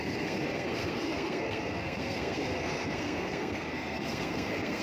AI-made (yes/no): yes